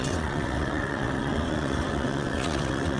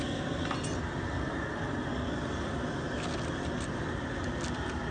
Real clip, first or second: second